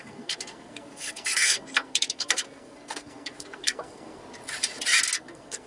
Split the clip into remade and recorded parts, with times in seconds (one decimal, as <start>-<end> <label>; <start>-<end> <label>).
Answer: 0.0-4.2 remade; 4.2-5.2 recorded; 5.2-5.7 remade